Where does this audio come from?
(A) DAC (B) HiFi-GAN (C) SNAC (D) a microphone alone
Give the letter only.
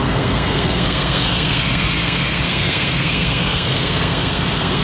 C